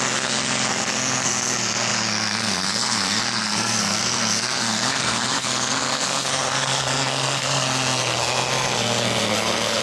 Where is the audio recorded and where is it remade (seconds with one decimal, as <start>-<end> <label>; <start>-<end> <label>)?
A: 0.0-9.8 remade